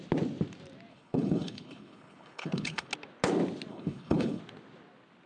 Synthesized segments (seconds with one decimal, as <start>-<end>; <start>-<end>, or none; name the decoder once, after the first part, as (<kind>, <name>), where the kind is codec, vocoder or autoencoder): 0.9-2.9 (codec, HILCodec); 3.7-4.4